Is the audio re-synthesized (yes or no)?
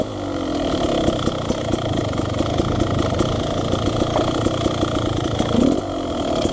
no